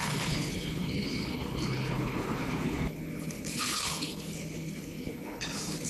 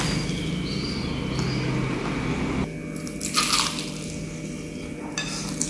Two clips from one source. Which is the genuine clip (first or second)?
second